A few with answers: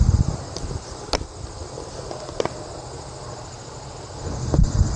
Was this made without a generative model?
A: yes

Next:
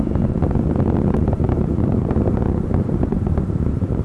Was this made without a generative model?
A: no